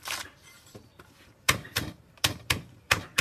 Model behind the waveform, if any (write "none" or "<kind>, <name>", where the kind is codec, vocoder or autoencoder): vocoder, BigVGAN v2